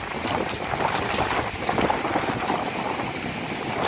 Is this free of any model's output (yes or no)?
yes